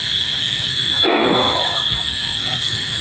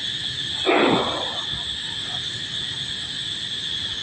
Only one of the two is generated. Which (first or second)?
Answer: first